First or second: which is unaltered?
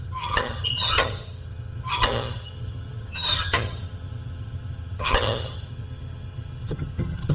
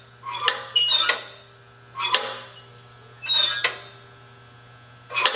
second